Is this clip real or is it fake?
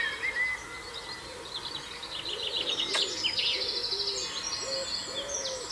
real